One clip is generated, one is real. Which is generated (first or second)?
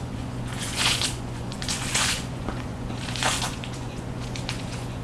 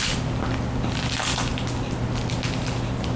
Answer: first